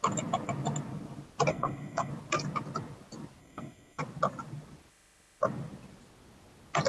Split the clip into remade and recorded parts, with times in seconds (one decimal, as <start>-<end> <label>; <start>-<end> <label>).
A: 0.0-1.5 recorded; 1.5-2.1 remade; 2.1-3.4 recorded; 3.4-4.0 remade; 4.0-6.9 recorded